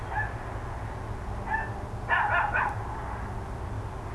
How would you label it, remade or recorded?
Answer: recorded